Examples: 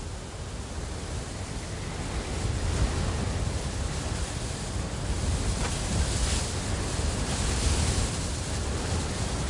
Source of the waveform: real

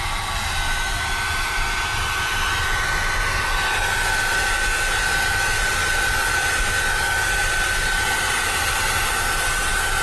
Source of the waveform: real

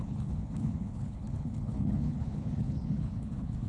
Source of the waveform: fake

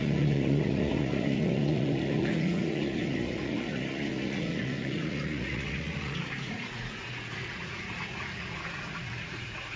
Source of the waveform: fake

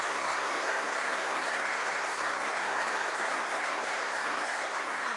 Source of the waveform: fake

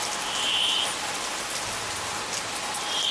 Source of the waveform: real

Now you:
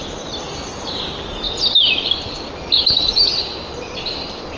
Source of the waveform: real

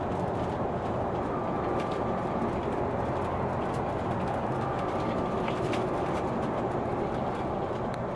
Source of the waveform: real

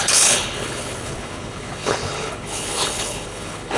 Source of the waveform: fake